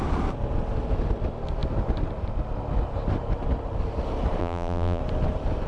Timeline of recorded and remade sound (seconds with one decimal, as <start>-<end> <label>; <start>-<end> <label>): 0.0-4.4 recorded; 4.4-5.0 remade; 5.0-5.7 recorded